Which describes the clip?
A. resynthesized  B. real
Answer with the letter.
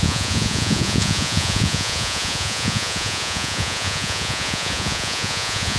A